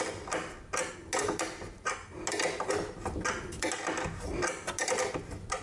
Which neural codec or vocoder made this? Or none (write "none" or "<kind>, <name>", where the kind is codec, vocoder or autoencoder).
none